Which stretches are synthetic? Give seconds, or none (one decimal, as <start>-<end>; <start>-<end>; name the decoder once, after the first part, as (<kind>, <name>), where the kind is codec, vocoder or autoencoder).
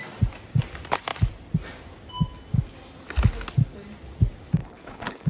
4.6-5.3 (codec, HILCodec)